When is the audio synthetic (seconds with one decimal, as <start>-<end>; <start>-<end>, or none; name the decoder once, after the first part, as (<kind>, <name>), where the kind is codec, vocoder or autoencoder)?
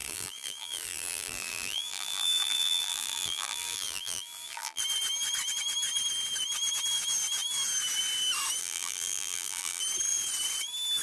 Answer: 0.0-4.8 (vocoder, BigVGAN v2); 8.6-9.8